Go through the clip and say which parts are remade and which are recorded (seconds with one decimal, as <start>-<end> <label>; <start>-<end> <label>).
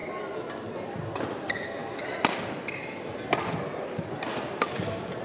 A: 0.0-5.2 recorded